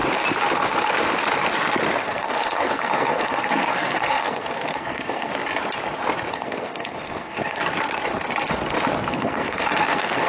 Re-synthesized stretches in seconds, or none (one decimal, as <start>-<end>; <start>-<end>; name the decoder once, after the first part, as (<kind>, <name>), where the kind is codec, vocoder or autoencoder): 1.9-5.3 (codec, SNAC); 6.3-7.6; 9.1-10.3